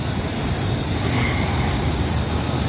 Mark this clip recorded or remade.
recorded